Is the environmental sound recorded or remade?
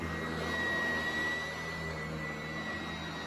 recorded